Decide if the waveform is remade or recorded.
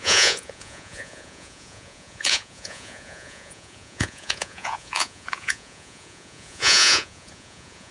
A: remade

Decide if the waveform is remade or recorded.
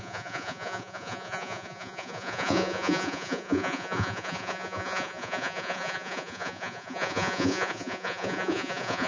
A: remade